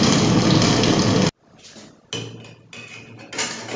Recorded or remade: recorded